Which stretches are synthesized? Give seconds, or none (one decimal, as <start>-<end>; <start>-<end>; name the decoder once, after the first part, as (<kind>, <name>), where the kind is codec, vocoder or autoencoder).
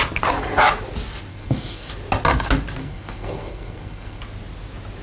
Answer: 1.3-1.9 (codec, SNAC); 2.8-4.2